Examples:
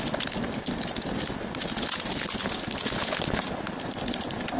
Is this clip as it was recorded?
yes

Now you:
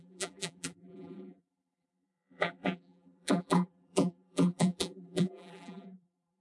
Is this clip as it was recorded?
no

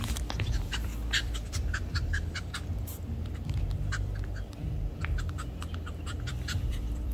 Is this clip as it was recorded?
no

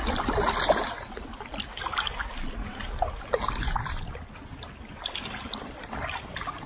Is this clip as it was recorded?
yes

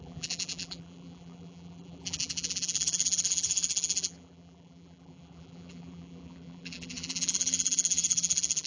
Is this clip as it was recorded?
no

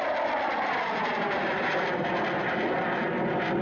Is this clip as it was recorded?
yes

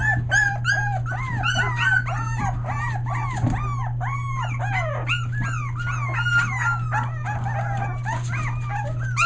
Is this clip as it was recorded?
yes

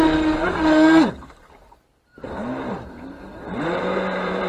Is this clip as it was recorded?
no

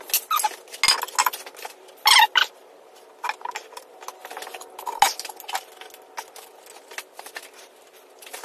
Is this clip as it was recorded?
yes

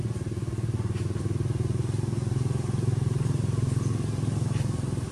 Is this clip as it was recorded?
yes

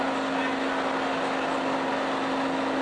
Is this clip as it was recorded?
yes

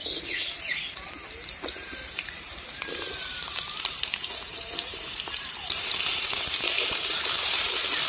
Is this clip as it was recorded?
no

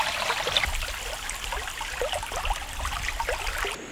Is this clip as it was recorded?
yes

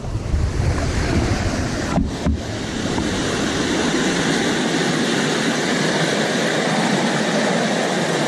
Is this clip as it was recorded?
yes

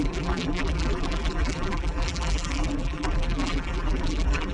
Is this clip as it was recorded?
no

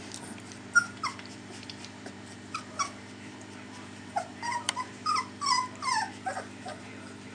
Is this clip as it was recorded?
no